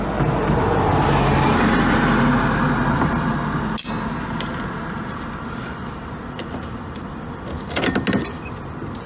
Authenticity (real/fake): real